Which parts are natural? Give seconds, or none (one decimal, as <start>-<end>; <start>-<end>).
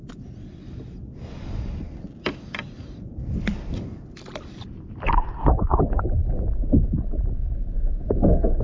0.0-8.6